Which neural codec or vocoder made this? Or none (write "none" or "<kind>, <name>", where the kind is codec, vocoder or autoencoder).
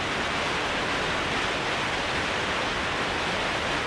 none